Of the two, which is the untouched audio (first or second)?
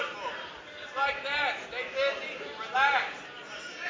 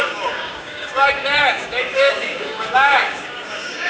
first